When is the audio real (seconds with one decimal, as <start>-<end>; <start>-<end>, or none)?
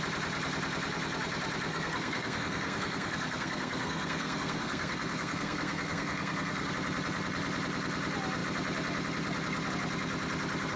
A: 0.0-1.7; 6.7-10.8